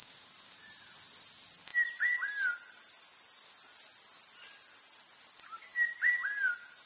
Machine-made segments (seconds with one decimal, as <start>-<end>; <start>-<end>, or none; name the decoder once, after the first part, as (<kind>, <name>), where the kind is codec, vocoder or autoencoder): 0.0-0.9 (vocoder, BigVGAN v2)